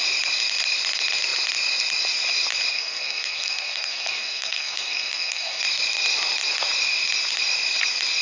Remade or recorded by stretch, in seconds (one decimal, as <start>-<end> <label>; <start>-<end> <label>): 0.0-2.7 recorded; 2.7-5.6 remade; 5.6-8.2 recorded